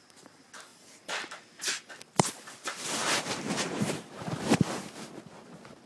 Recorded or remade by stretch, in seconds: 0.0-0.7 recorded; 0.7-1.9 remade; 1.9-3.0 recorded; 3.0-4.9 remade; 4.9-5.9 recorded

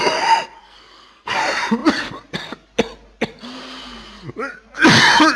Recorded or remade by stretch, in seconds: 0.0-0.6 recorded; 0.6-1.4 remade; 1.4-5.4 recorded

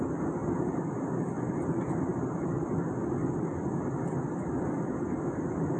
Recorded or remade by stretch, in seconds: 0.0-0.4 recorded; 0.4-1.5 remade; 1.5-5.8 recorded